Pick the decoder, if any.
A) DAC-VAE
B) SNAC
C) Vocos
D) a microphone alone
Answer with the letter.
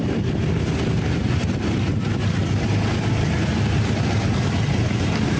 D